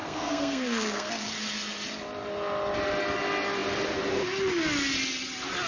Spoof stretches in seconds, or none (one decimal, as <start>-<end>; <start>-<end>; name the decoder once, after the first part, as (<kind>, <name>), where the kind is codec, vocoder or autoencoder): 0.0-1.1 (codec, SNAC)